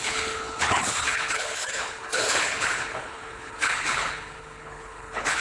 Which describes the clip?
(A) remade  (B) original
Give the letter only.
A